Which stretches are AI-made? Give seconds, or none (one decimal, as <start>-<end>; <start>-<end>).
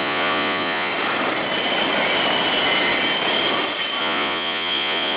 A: 0.0-0.9; 4.0-5.2